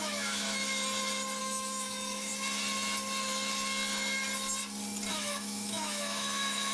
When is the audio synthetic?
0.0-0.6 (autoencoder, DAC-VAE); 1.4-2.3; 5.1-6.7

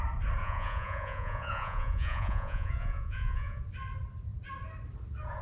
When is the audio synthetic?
0.4-3.6 (vocoder, Vocos)